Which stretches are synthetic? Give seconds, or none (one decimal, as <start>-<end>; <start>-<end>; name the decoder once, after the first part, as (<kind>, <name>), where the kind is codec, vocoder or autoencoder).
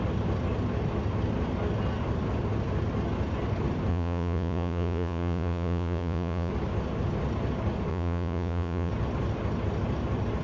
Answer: 3.9-6.5 (vocoder, Vocos); 7.9-8.9